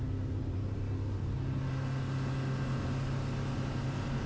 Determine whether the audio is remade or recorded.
recorded